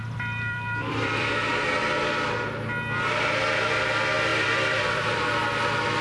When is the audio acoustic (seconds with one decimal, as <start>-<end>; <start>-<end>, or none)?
1.5-4.3; 5.2-6.0

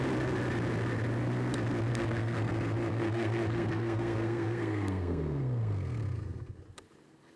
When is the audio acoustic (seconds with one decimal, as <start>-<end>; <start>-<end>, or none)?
0.0-1.9; 2.5-2.9; 6.6-7.4